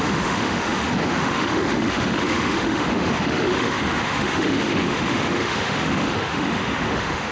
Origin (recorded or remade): remade